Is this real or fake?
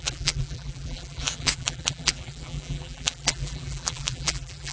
fake